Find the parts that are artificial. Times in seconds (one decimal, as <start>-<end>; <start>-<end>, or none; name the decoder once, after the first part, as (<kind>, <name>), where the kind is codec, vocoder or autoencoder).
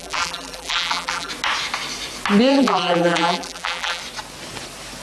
0.0-1.3 (vocoder, BigVGAN v2); 2.5-4.0